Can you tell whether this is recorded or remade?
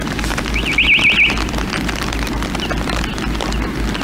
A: recorded